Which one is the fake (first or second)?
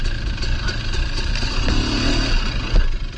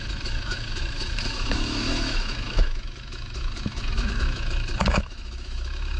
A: second